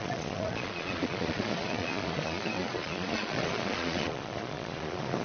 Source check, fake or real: fake